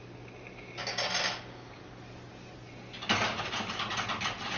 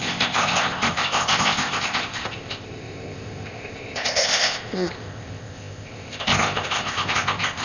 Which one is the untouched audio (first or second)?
first